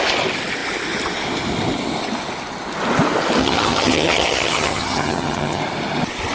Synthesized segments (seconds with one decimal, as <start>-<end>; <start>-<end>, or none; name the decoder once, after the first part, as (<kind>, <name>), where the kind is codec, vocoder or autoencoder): 3.4-5.6 (vocoder, HiFi-GAN)